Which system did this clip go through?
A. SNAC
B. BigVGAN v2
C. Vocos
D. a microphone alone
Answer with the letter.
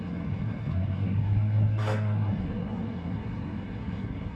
A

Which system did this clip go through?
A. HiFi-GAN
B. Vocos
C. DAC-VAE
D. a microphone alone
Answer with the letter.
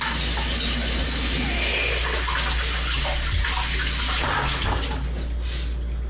D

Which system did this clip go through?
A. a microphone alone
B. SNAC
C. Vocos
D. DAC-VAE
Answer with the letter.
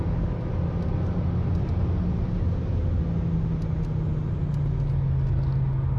A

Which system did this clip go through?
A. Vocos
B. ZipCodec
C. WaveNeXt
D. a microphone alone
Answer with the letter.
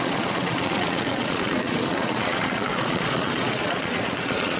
A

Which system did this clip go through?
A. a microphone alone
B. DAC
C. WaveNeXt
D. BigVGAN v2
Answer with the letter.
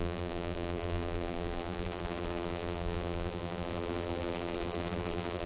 D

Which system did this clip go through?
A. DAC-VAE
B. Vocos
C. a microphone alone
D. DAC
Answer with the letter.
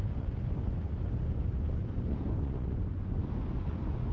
B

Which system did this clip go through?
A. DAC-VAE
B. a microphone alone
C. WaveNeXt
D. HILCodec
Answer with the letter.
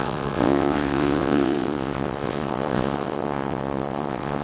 C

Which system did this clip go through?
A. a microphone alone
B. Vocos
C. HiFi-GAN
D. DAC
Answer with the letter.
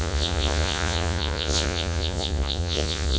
B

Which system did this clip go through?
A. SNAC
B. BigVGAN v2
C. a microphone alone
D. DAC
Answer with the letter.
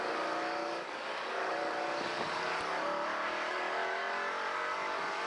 D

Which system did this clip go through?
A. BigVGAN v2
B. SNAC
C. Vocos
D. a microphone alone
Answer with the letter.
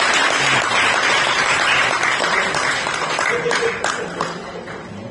A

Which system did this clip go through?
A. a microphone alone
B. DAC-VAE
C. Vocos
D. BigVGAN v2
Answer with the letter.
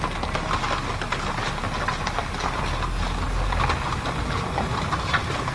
A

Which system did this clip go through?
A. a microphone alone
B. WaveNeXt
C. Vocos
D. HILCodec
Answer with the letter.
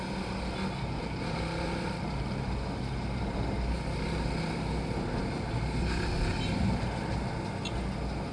A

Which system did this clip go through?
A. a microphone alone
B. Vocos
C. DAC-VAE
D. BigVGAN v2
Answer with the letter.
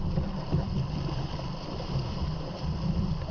D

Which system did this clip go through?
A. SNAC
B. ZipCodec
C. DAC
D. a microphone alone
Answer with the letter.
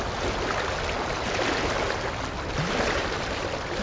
D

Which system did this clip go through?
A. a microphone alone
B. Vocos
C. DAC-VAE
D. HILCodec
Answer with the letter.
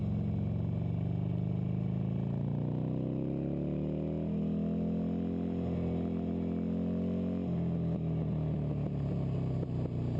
A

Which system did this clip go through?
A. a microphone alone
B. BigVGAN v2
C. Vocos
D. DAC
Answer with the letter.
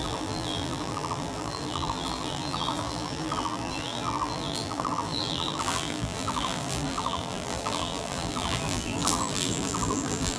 B